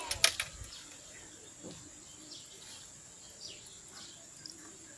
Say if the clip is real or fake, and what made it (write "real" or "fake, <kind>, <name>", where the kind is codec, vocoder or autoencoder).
real